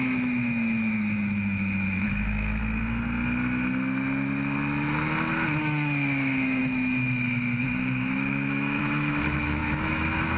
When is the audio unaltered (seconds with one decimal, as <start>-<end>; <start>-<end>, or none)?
2.6-5.6